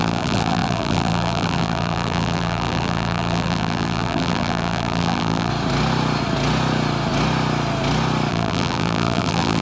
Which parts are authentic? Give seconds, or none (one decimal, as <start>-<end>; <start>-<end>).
5.5-8.3